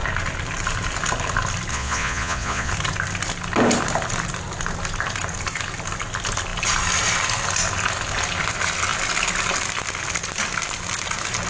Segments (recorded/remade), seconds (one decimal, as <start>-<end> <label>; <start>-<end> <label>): 0.0-1.7 recorded; 1.7-2.7 remade; 2.7-11.5 recorded